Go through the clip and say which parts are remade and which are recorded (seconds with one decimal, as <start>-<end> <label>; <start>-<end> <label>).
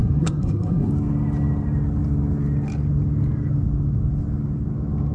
0.0-0.9 remade; 0.9-5.1 recorded